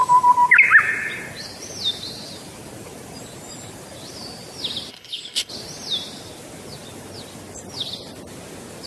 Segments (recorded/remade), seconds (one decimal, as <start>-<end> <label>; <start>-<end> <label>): 0.0-4.9 recorded; 4.9-5.5 remade; 5.5-8.9 recorded